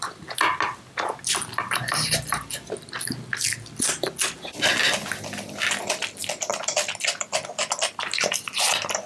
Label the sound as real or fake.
real